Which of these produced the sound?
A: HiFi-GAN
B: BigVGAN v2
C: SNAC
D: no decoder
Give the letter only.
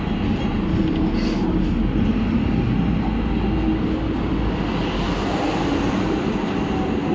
D